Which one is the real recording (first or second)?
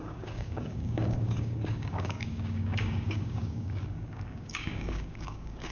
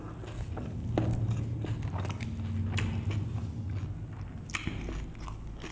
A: second